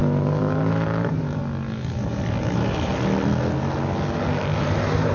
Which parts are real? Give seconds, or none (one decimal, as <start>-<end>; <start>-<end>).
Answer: 1.4-2.4; 2.9-4.6